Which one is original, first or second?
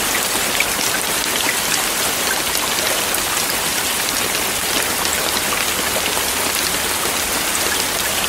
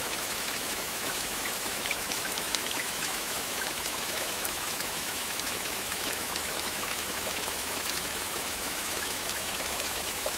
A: first